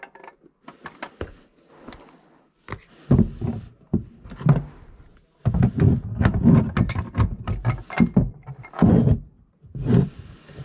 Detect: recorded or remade recorded